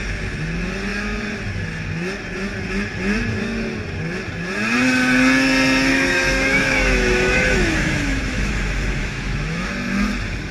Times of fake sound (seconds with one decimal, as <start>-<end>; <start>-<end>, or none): 5.9-8.5; 9.0-9.7